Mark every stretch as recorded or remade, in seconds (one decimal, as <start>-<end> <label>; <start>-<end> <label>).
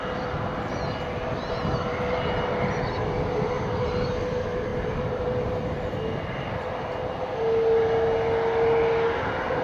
0.0-9.6 recorded